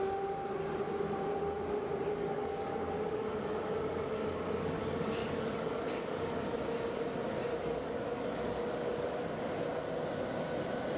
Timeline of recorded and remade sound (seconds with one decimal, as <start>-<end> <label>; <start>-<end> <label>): 0.0-2.2 recorded; 2.2-4.8 remade; 4.8-5.2 recorded; 5.2-6.3 remade; 6.3-7.5 recorded; 7.5-9.2 remade; 9.2-11.0 recorded